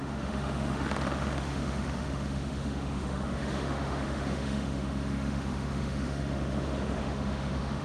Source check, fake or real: fake